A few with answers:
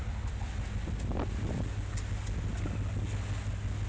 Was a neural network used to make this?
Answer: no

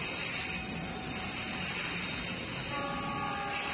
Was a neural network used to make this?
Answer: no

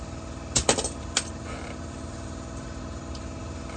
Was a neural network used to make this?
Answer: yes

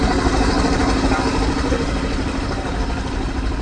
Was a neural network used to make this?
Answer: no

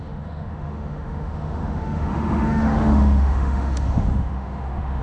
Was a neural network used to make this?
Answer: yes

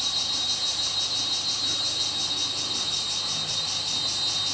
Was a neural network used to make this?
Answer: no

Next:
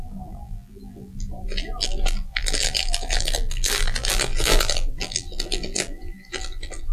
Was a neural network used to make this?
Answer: yes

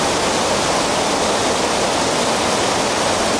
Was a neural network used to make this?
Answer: no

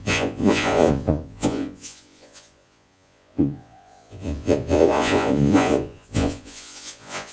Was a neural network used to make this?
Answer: yes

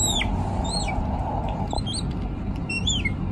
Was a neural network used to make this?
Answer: no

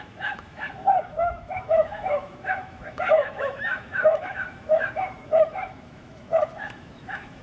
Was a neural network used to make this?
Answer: yes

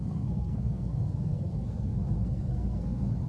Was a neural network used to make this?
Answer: yes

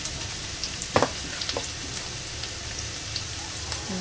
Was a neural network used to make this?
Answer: yes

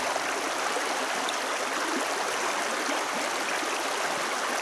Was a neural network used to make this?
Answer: no